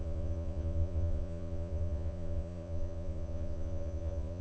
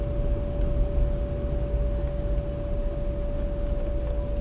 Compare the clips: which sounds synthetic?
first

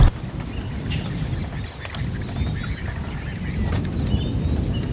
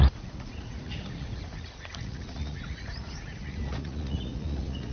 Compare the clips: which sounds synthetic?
second